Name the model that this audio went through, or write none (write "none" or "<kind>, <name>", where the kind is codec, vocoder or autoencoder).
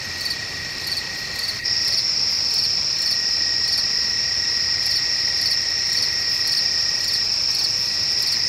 none